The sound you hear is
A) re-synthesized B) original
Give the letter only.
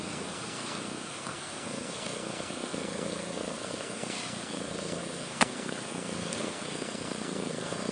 A